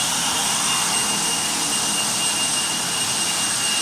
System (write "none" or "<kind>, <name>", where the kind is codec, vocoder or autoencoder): none